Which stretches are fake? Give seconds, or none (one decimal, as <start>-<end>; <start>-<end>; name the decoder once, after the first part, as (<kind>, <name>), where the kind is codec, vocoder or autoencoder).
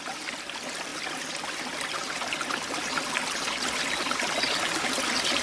none